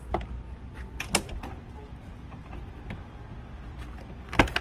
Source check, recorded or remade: recorded